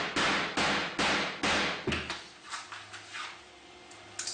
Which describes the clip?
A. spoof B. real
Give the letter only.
B